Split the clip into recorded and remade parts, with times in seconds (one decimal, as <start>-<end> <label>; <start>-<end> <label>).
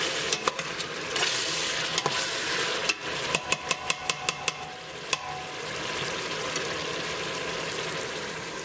0.0-8.6 recorded